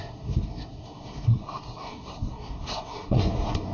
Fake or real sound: fake